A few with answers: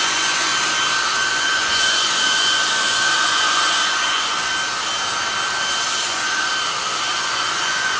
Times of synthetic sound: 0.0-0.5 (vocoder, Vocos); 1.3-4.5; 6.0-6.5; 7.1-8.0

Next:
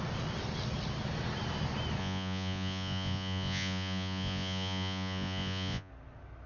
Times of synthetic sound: 2.0-5.9 (vocoder, Vocos)

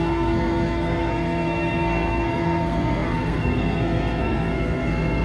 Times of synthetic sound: 0.0-5.2 (codec, SNAC)

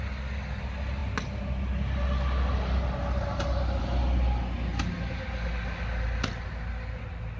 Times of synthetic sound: none

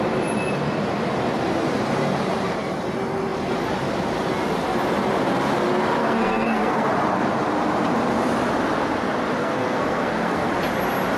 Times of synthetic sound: 6.0-6.9 (codec, SNAC); 9.4-10.5

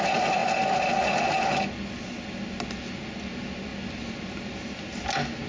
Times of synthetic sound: none